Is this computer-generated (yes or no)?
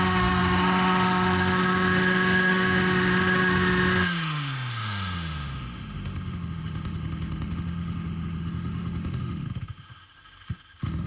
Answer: yes